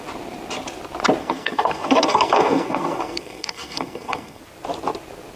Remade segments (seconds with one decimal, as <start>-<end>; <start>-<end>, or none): 1.2-4.4

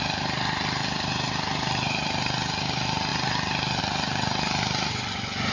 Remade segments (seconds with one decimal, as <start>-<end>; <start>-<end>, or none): none